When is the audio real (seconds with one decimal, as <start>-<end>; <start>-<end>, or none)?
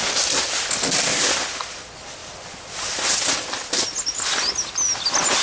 0.0-5.4